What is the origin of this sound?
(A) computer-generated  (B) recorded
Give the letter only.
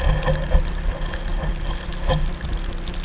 B